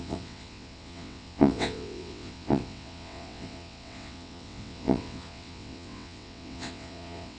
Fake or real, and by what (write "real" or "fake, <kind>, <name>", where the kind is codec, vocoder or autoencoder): fake, vocoder, WaveNeXt